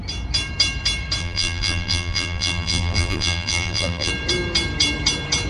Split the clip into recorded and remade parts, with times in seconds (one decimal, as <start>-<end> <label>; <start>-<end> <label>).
0.0-1.2 recorded; 1.2-4.1 remade; 4.1-5.5 recorded